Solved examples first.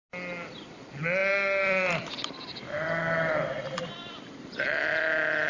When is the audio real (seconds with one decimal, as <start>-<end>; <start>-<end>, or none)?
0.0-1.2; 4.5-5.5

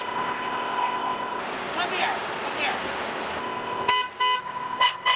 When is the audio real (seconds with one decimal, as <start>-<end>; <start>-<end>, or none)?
1.4-3.4; 3.9-4.4

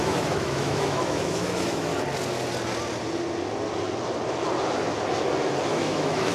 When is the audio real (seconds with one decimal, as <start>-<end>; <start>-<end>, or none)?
1.9-5.7

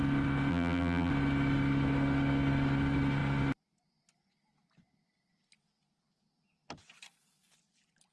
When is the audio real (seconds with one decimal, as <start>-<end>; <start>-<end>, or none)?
0.0-0.5; 1.1-8.1